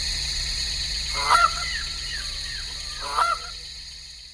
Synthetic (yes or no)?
yes